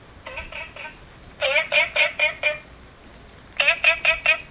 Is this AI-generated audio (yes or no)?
no